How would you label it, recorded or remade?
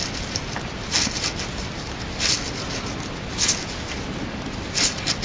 recorded